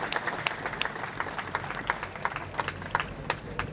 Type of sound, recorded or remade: recorded